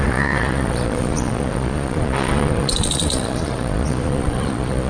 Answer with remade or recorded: remade